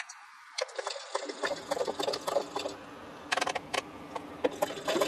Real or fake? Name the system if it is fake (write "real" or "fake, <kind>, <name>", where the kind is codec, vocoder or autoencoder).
real